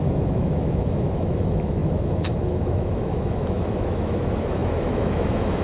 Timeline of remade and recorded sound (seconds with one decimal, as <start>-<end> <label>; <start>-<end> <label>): 0.0-5.6 remade